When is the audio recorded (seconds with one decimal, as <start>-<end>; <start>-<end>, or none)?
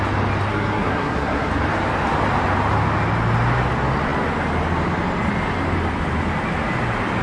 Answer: 0.0-0.5; 1.5-7.2